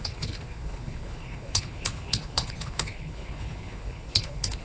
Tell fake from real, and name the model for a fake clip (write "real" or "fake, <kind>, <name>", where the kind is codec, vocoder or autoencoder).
fake, codec, HILCodec